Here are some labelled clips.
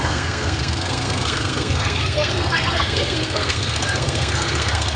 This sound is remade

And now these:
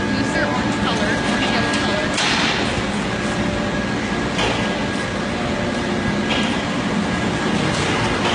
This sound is recorded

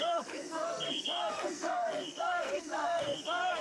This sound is remade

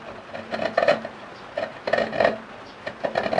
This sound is recorded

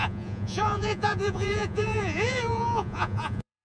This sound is remade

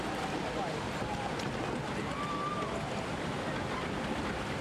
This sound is recorded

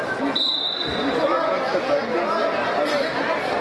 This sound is recorded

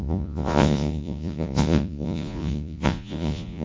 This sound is remade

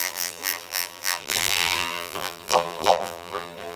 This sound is remade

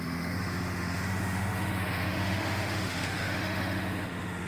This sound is remade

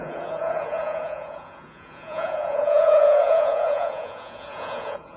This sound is remade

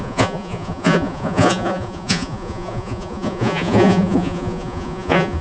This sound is remade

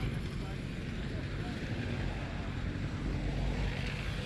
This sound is recorded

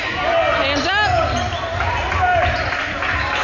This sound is recorded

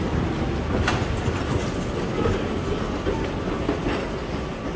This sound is recorded